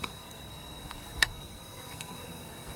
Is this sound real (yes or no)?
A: no